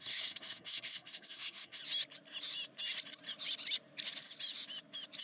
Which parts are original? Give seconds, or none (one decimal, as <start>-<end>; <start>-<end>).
1.8-5.2

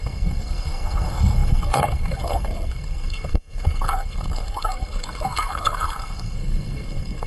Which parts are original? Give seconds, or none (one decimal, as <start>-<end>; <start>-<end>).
none

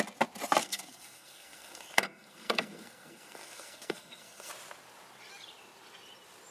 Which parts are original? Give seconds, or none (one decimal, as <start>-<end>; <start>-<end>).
0.0-0.6; 4.5-6.5

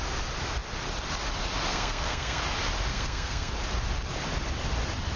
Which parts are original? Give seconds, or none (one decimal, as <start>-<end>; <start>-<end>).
0.0-1.7; 2.4-2.9; 3.5-5.2

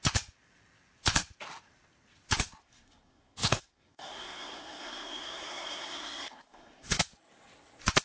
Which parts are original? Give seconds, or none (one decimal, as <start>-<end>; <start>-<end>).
0.0-2.6; 7.0-8.0